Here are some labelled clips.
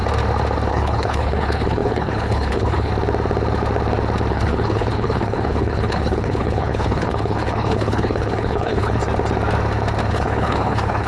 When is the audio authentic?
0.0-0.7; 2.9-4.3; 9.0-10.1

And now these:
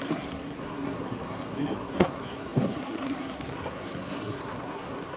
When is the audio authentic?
none

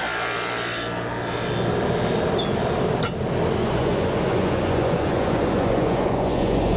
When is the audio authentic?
0.0-3.6

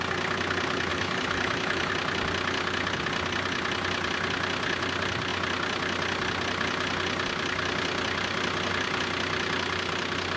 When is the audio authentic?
0.0-0.9; 1.9-10.4